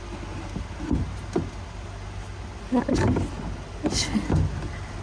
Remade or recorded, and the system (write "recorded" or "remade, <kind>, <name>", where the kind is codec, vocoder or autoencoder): recorded